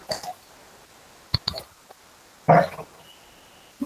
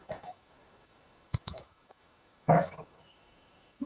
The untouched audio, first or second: first